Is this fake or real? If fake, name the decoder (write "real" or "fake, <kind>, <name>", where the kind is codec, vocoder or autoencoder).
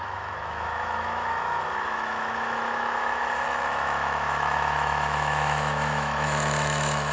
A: fake, autoencoder, DAC-VAE